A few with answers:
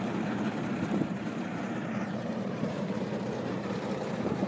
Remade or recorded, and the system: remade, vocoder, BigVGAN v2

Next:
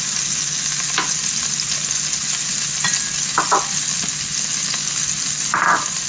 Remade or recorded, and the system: recorded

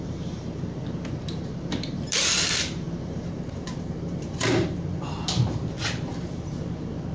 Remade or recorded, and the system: remade, vocoder, BigVGAN v2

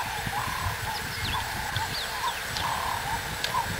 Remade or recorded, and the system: recorded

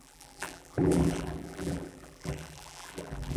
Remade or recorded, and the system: remade, vocoder, BigVGAN v2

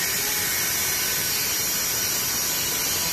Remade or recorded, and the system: recorded